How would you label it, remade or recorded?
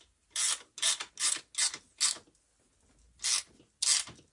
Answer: recorded